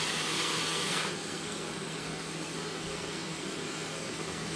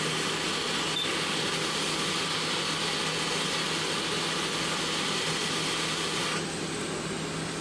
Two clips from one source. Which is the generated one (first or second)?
first